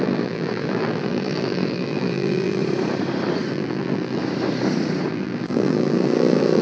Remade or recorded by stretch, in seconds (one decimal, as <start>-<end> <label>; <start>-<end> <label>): 0.0-2.6 remade; 2.6-3.5 recorded; 3.5-4.2 remade; 4.2-5.1 recorded; 5.1-6.6 remade